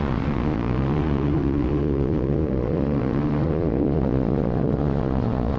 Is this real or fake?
fake